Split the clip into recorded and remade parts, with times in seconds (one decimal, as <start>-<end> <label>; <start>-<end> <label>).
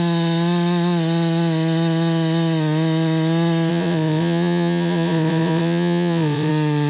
0.0-3.7 recorded; 3.7-6.5 remade; 6.5-6.9 recorded